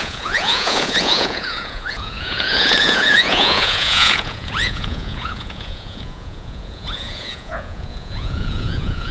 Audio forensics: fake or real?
fake